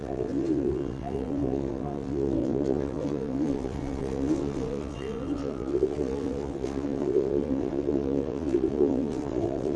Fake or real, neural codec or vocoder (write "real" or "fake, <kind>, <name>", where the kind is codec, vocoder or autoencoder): fake, vocoder, WaveNeXt